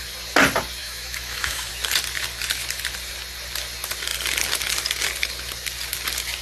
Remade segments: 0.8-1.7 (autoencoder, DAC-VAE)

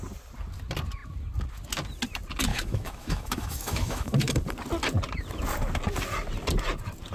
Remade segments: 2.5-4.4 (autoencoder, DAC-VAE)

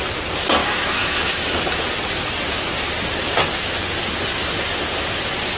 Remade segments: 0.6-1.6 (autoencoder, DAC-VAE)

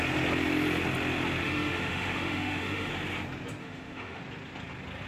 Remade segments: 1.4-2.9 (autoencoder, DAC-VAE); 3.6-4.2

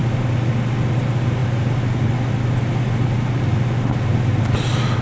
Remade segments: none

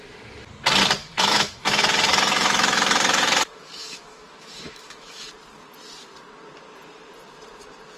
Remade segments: 1.0-5.3 (autoencoder, DAC-VAE)

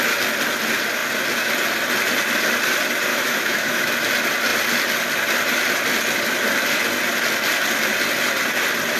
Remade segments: 3.1-3.9 (autoencoder, DAC-VAE)

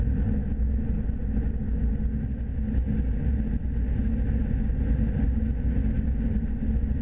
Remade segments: 0.4-0.9 (autoencoder, DAC-VAE)